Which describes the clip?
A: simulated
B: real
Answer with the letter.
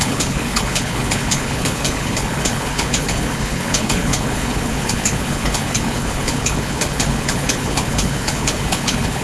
A